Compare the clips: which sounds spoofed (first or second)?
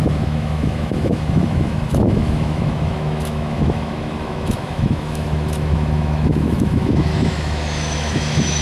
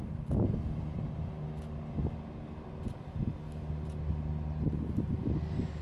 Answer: first